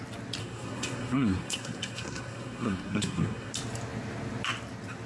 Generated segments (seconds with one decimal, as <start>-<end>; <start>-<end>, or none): 0.4-3.5